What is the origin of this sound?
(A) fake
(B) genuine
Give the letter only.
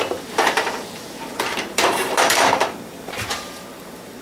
A